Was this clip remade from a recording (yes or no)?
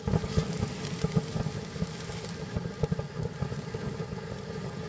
yes